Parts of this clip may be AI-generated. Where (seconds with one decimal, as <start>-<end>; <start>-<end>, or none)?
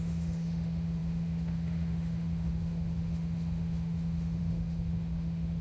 0.0-5.6